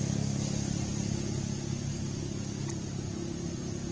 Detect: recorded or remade recorded